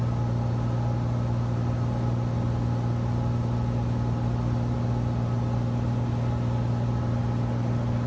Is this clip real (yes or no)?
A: yes